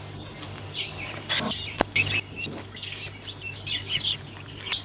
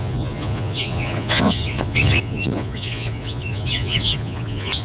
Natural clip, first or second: first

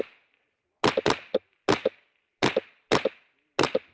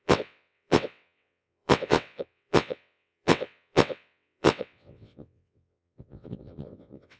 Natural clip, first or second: first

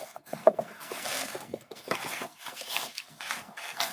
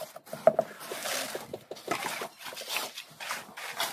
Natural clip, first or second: second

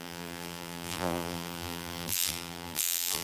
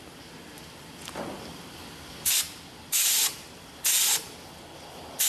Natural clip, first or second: second